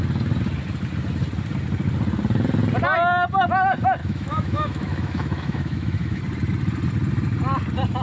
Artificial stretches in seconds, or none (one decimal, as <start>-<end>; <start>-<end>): 4.0-6.2